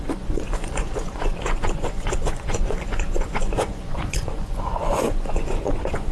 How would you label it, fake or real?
fake